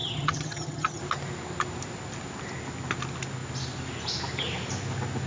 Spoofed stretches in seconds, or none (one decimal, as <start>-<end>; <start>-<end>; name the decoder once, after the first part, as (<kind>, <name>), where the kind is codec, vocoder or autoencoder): 0.0-1.0 (vocoder, HiFi-GAN)